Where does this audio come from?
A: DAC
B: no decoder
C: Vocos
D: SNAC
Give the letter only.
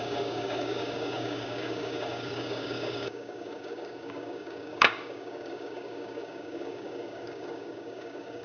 A